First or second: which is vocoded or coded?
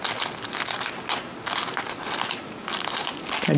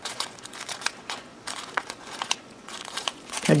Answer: second